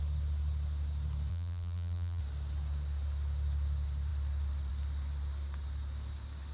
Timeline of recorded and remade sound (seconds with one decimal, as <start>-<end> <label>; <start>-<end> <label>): 0.0-1.3 recorded; 1.3-2.2 remade; 2.2-6.5 recorded